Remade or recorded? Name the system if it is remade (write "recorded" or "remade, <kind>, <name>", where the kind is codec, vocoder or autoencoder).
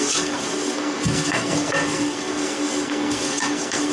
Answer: remade, codec, SNAC